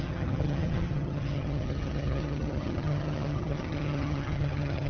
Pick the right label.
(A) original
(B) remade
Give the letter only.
B